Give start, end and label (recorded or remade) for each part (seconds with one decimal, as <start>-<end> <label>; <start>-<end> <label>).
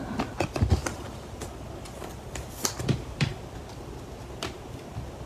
0.0-0.8 recorded; 0.8-1.7 remade; 1.7-5.3 recorded